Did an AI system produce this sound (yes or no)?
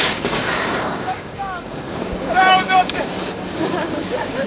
yes